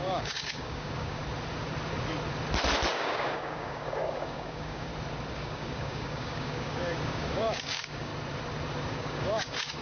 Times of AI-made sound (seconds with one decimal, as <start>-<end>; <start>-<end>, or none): 0.0-1.2; 2.9-4.9; 5.4-8.1; 8.9-9.8